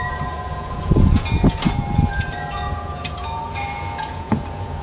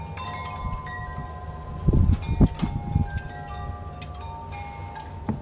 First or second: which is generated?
first